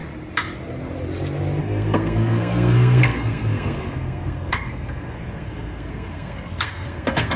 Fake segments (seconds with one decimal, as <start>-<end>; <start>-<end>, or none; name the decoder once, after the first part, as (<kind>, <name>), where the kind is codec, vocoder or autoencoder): 1.6-7.4 (codec, SNAC)